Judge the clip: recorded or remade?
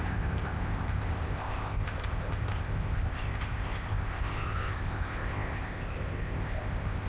remade